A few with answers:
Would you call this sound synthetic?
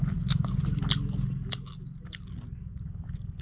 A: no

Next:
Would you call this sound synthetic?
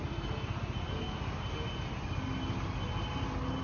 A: no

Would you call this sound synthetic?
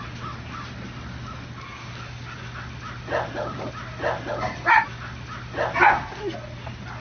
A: no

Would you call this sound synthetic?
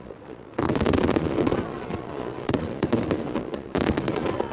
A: yes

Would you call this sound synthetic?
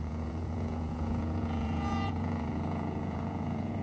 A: yes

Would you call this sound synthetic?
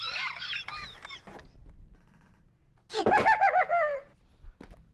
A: no